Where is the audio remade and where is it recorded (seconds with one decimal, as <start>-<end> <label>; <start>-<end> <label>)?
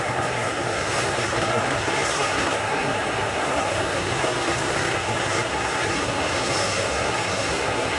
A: 0.0-8.0 remade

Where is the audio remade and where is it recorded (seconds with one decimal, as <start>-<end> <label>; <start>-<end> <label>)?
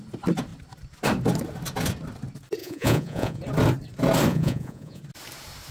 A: 0.0-2.6 recorded; 2.6-3.4 remade; 3.4-4.3 recorded; 4.3-5.0 remade; 5.0-5.7 recorded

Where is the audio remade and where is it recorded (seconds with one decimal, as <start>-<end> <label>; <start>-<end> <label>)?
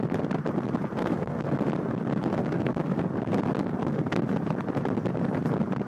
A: 0.0-1.0 recorded; 1.0-1.5 remade; 1.5-2.4 recorded; 2.4-3.0 remade; 3.0-3.6 recorded; 3.6-4.2 remade; 4.2-5.9 recorded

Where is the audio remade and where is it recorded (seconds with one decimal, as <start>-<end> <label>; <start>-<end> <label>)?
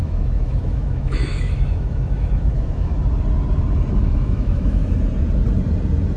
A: 0.0-2.9 remade; 2.9-4.0 recorded; 4.0-4.8 remade; 4.8-6.2 recorded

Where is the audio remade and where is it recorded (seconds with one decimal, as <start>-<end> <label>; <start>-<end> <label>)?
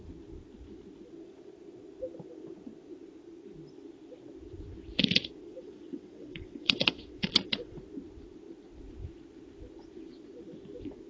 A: 0.0-5.5 recorded; 5.5-7.8 remade; 7.8-11.1 recorded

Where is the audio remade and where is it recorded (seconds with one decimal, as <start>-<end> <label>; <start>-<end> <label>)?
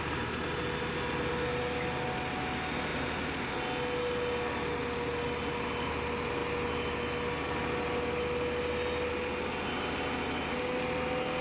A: 0.0-11.4 recorded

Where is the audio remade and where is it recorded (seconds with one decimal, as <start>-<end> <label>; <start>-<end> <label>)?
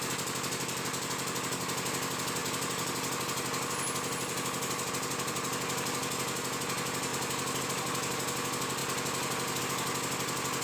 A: 0.0-10.6 recorded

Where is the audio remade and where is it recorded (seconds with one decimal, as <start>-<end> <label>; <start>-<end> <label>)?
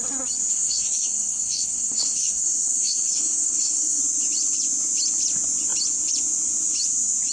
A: 0.0-0.5 recorded; 0.5-4.0 remade; 4.0-7.3 recorded